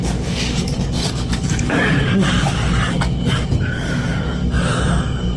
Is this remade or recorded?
remade